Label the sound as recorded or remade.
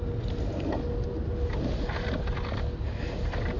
recorded